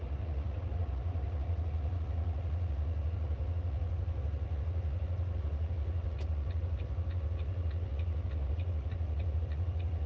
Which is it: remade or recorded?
remade